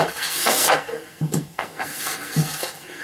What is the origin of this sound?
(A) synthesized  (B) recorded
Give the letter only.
A